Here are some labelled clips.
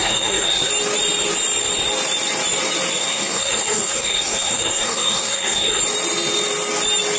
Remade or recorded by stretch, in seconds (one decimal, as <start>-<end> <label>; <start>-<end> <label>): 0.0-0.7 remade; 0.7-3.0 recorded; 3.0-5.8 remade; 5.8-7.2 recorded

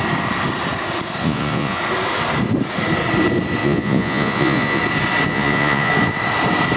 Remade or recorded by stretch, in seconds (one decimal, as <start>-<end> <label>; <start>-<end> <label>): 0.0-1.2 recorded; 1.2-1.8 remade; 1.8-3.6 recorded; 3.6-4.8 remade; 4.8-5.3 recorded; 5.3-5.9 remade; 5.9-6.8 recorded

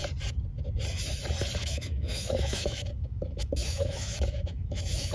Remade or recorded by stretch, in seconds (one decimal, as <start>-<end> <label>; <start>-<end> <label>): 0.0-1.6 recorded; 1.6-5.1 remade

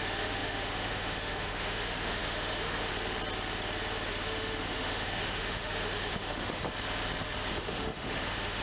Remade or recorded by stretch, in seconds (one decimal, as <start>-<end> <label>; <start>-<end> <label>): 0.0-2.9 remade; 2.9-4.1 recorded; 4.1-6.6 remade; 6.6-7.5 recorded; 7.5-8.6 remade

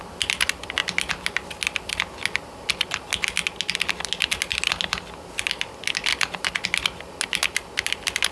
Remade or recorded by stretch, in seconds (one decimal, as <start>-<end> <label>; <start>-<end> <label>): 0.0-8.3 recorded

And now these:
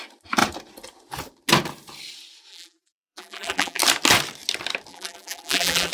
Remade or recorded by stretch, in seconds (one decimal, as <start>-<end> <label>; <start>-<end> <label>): 0.0-2.5 recorded; 2.5-3.8 remade; 3.8-4.9 recorded; 4.9-5.9 remade

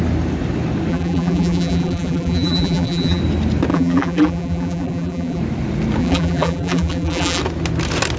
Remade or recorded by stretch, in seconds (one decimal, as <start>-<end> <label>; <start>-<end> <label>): 0.0-0.9 recorded; 0.9-3.2 remade; 3.2-3.7 recorded; 3.7-5.4 remade; 5.4-6.0 recorded; 6.0-7.4 remade; 7.4-8.2 recorded

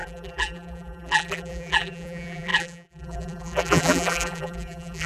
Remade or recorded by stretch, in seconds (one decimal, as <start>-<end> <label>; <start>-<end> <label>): 0.0-5.1 remade